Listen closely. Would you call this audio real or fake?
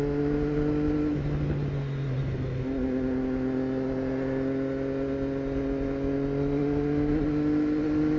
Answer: real